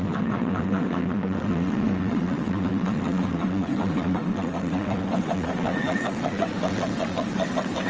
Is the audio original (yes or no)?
no